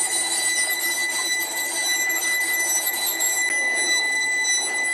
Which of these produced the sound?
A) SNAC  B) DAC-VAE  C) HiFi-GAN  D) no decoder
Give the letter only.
D